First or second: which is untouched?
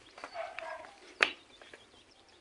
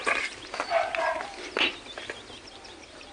second